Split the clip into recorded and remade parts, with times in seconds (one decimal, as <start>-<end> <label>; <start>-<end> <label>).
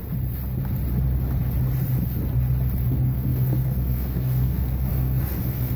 0.0-2.9 recorded; 2.9-5.8 remade